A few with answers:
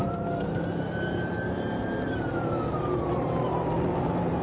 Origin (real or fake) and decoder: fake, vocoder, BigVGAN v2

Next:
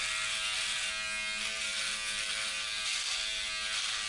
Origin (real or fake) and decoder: real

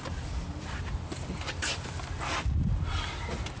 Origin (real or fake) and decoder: fake, vocoder, BigVGAN v2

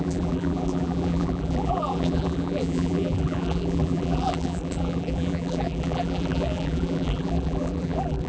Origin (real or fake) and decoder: fake, vocoder, BigVGAN v2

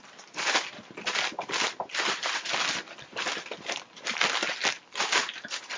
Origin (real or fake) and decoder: fake, vocoder, BigVGAN v2